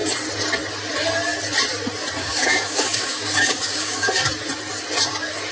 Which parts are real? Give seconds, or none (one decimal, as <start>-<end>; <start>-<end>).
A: 0.0-2.2; 4.3-5.5